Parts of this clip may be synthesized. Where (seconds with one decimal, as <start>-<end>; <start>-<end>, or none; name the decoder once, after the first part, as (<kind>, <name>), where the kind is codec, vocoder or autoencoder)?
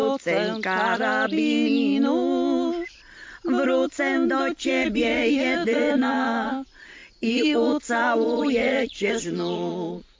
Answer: 4.7-10.2 (vocoder, Vocos)